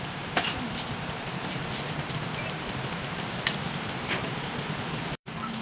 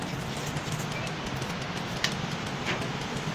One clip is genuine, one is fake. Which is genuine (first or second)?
second